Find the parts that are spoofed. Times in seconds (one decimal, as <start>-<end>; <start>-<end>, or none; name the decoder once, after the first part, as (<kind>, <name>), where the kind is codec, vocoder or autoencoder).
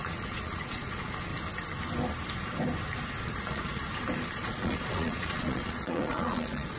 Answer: 0.0-1.3 (vocoder, Vocos); 3.2-3.8; 4.3-6.8